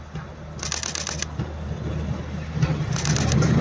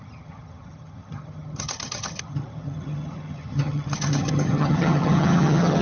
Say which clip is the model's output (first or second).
second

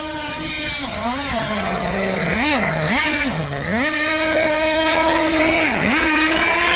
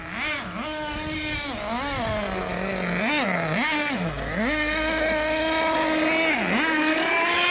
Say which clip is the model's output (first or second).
first